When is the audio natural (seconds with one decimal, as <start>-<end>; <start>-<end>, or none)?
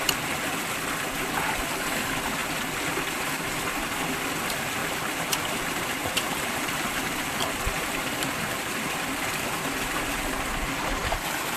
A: 0.0-4.8; 10.0-11.6